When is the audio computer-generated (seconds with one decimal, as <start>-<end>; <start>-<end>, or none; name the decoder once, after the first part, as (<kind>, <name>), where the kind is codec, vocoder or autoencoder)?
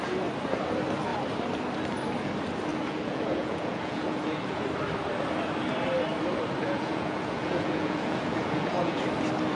2.7-4.6 (vocoder, Vocos); 6.6-9.0